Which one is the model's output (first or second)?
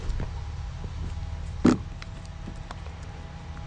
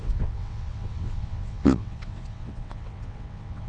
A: second